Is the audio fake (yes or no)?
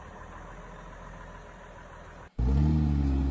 no